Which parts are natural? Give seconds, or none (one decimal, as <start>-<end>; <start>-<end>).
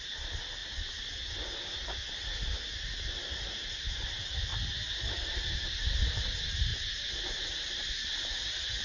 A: 0.6-3.0; 4.5-5.0